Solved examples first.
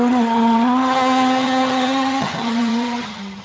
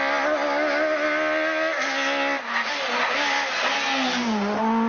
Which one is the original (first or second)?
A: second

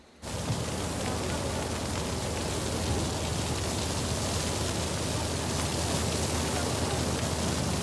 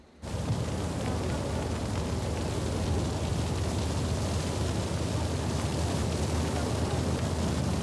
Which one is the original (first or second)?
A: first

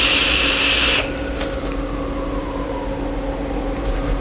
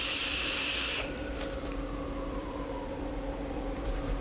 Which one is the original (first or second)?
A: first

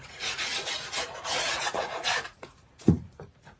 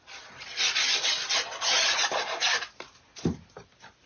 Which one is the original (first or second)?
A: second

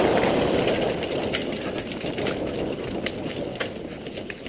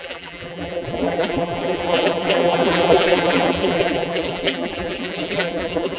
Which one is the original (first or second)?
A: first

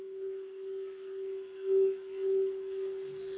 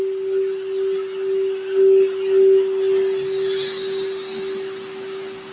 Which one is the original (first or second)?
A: second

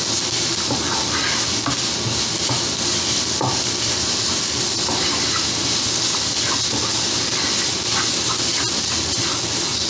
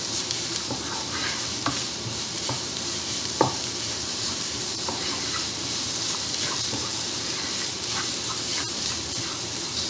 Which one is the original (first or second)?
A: first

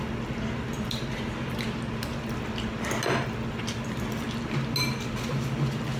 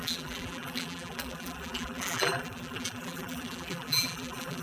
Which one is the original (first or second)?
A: first